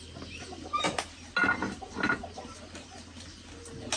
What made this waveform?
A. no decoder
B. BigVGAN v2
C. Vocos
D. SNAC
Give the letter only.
A